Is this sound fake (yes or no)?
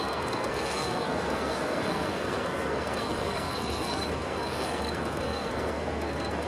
yes